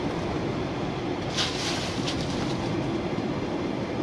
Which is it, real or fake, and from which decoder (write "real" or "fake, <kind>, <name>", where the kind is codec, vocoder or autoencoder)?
fake, vocoder, BigVGAN v2